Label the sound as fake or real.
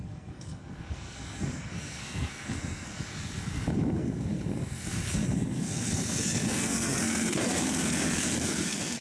fake